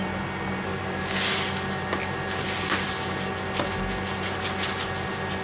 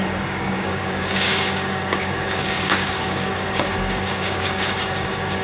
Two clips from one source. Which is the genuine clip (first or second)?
first